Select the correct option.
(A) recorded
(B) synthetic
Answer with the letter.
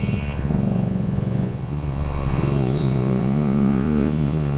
B